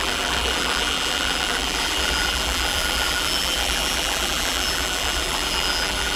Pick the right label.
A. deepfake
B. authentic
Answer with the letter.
A